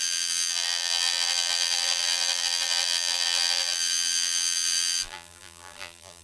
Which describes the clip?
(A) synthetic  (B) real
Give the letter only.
A